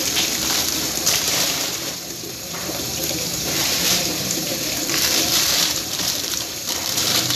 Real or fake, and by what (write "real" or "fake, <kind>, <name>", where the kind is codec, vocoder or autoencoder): fake, vocoder, BigVGAN v2